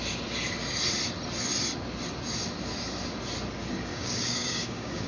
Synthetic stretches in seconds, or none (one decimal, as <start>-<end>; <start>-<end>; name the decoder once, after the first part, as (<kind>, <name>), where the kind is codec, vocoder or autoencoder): 3.9-5.1 (codec, DAC)